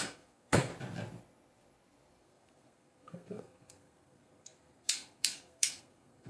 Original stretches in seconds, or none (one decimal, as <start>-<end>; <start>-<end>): 0.7-2.2